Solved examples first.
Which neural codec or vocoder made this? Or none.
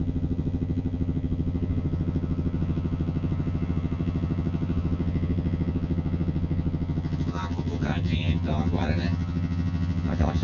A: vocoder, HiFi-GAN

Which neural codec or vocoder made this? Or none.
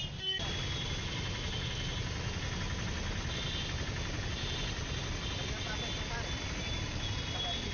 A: none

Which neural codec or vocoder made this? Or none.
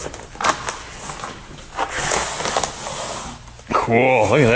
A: none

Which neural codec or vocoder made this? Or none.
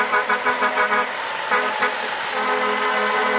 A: none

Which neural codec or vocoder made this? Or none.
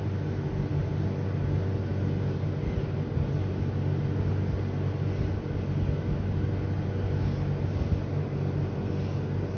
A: none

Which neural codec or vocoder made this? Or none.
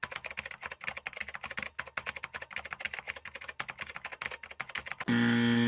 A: none